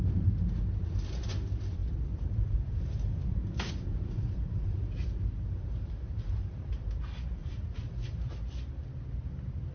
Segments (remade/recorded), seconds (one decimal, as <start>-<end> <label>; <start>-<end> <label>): 0.0-1.8 recorded; 1.8-7.0 remade; 7.0-7.4 recorded; 7.4-8.3 remade; 8.3-9.7 recorded